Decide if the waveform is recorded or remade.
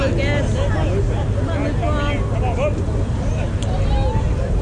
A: recorded